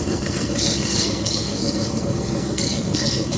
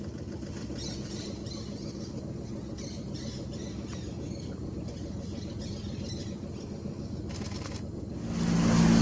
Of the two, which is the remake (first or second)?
first